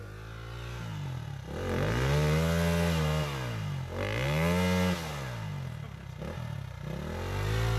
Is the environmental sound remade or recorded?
recorded